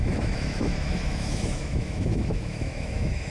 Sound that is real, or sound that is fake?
fake